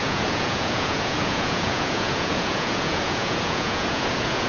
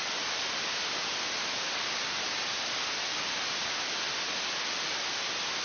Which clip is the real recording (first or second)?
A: second